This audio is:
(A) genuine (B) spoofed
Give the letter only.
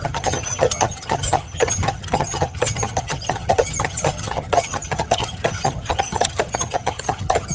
B